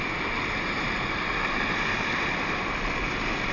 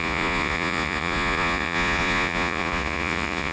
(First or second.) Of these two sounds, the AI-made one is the second